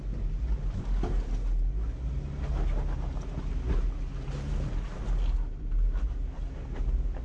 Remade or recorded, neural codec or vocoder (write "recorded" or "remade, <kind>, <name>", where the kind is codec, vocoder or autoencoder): recorded